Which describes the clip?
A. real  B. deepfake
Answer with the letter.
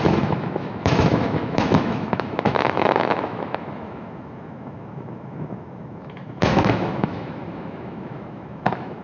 B